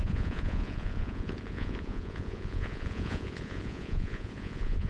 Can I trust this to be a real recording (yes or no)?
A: no